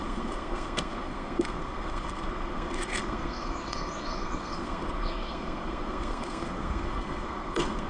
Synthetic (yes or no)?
yes